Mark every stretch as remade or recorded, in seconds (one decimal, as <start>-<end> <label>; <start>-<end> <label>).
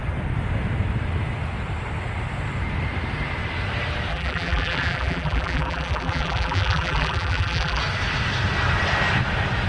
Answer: 0.0-4.1 recorded; 4.1-7.8 remade; 7.8-9.7 recorded